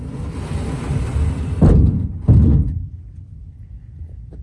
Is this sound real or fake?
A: real